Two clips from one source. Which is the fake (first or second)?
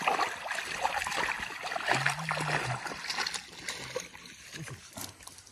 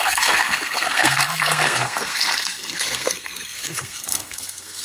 second